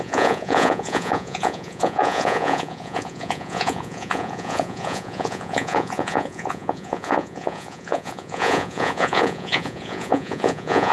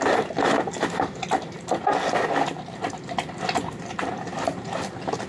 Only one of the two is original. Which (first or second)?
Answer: second